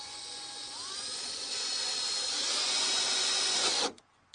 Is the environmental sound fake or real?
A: fake